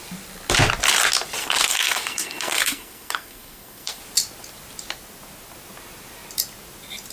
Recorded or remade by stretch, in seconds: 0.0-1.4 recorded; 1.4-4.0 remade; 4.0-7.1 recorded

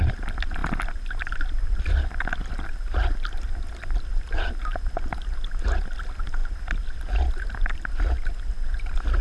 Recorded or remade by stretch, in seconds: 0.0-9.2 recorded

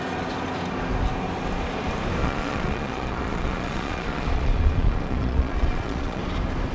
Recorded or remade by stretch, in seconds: 0.0-2.2 recorded; 2.2-6.2 remade; 6.2-6.7 recorded